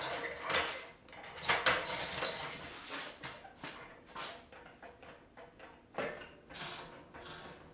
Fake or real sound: real